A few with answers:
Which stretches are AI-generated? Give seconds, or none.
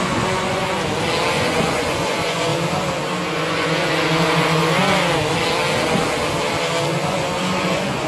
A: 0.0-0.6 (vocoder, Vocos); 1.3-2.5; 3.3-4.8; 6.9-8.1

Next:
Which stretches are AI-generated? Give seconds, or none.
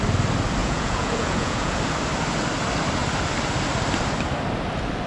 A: 0.6-1.8 (vocoder, Vocos)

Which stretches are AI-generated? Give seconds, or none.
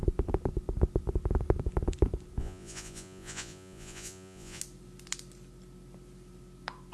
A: 2.4-4.6 (vocoder, Vocos)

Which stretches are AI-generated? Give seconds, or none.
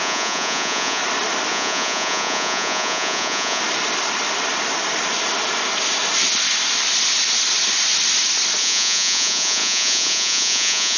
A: 0.0-1.0 (vocoder, Vocos); 1.5-3.6; 8.6-11.0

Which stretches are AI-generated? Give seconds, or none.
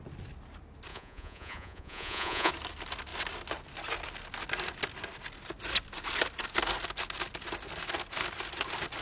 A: 0.9-2.5 (vocoder, Vocos)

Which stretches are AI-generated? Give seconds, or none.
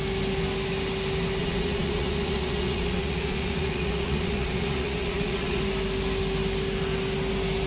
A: 1.4-5.6 (vocoder, Vocos)